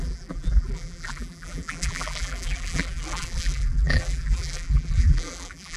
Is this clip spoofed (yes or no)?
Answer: yes